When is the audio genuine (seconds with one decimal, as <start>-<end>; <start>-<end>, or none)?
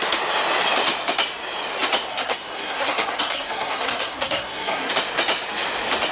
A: 0.0-2.1; 4.9-6.1